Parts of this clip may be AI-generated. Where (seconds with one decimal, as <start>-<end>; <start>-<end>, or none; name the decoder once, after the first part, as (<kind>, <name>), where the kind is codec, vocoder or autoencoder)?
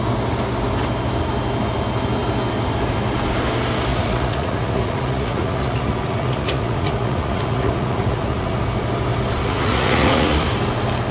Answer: 3.9-8.6 (vocoder, Vocos); 9.4-10.5